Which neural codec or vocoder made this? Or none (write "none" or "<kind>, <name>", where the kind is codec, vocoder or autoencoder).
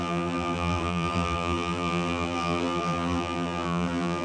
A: vocoder, BigVGAN v2